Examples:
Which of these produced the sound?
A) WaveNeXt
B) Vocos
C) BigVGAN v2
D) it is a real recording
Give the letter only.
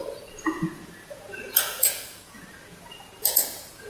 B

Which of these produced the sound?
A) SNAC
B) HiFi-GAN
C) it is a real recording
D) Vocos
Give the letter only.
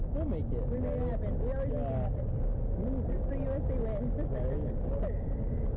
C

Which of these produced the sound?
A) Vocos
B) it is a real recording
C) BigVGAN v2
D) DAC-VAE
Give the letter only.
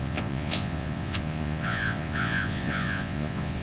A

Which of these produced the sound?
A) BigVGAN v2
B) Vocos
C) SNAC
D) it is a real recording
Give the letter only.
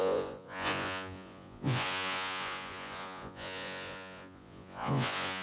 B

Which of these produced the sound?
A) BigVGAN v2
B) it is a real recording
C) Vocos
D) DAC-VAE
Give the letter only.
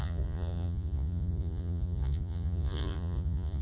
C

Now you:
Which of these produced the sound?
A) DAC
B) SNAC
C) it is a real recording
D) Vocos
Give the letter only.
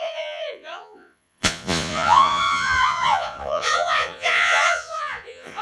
D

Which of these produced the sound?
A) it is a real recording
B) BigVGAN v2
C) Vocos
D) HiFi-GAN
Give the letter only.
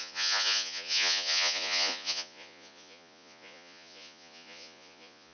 C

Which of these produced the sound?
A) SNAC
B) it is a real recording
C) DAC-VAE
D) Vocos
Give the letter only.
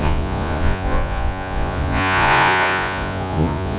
D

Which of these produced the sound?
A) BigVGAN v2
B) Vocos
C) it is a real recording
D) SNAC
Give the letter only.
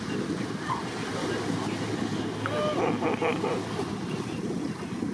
C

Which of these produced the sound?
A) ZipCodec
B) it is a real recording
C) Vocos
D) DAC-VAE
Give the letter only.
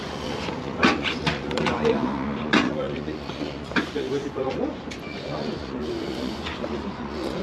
C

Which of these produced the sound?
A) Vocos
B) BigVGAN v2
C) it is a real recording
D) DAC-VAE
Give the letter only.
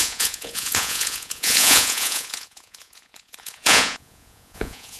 A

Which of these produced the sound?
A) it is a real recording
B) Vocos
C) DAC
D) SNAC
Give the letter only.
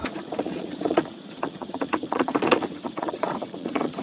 B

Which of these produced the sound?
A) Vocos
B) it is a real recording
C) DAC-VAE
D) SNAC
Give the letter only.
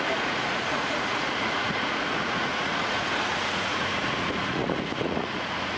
A